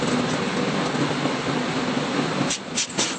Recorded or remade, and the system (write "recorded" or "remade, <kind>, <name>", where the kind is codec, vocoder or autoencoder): recorded